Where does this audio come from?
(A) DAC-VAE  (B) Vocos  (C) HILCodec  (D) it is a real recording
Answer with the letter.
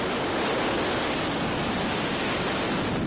D